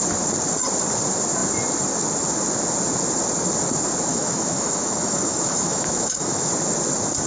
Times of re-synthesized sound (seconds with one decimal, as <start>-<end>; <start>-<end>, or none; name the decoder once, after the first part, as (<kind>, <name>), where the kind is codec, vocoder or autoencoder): 4.1-6.5 (autoencoder, DAC-VAE)